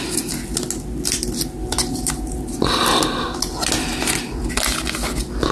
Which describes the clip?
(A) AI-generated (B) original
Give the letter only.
B